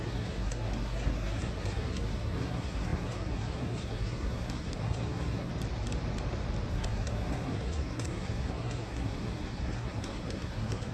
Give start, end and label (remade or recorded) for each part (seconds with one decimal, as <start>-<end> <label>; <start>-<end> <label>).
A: 0.0-5.5 remade; 5.5-6.7 recorded; 6.7-10.9 remade

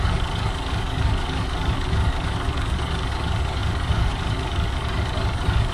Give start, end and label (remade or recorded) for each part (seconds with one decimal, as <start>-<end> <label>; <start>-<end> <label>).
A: 0.0-5.7 remade

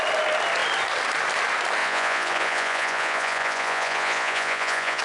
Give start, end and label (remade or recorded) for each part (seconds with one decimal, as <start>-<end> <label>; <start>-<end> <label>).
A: 0.0-1.8 recorded; 1.8-5.0 remade

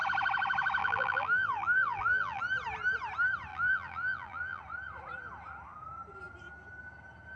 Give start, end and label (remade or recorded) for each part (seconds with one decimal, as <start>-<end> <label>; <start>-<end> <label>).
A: 0.0-0.8 recorded; 0.8-2.4 remade; 2.4-3.5 recorded; 3.5-4.6 remade; 4.6-7.4 recorded

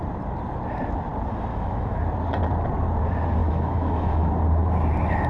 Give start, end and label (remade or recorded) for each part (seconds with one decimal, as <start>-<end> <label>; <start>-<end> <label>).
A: 0.0-1.5 recorded; 1.5-2.0 remade; 2.0-3.4 recorded; 3.4-4.3 remade; 4.3-5.3 recorded